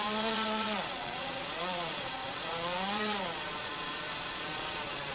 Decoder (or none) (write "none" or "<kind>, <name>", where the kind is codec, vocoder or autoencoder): vocoder, Vocos